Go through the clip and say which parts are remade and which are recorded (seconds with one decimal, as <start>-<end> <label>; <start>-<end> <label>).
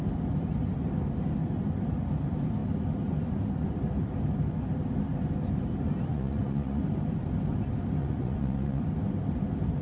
0.0-6.1 recorded; 6.1-6.8 remade; 6.8-8.0 recorded; 8.0-8.8 remade; 8.8-9.8 recorded